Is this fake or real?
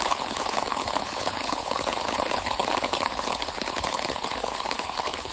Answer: fake